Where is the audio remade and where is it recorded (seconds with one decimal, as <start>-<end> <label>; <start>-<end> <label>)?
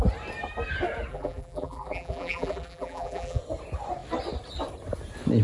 0.0-1.1 recorded; 1.1-3.4 remade; 3.4-5.4 recorded